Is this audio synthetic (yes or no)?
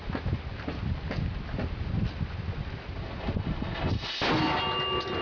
no